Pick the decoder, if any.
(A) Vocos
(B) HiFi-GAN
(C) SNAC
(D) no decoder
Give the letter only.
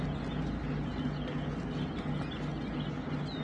D